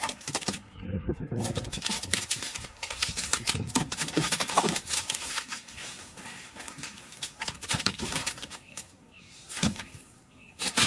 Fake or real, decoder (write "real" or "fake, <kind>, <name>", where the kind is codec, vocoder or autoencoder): fake, codec, SNAC